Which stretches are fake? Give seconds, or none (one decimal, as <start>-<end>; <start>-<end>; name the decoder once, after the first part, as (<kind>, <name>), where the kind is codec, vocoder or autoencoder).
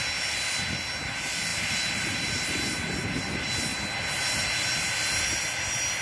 none